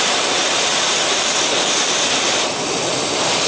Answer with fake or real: real